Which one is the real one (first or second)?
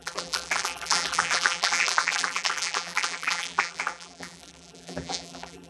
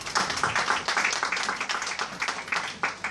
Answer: second